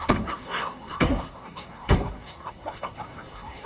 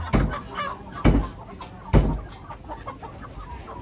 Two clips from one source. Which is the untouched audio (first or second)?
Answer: second